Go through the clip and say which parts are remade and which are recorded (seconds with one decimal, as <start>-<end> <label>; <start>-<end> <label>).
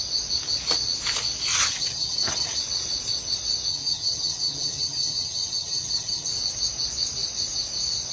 0.0-1.5 recorded; 1.5-2.6 remade; 2.6-3.7 recorded; 3.7-6.3 remade; 6.3-8.1 recorded